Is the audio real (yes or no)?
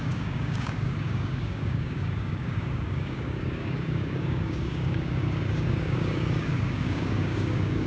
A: no